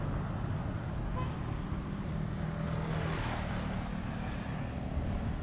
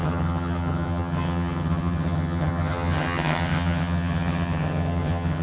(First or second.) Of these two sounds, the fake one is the second